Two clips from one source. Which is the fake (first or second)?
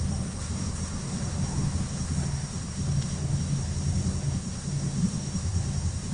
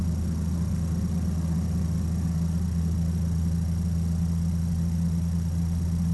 first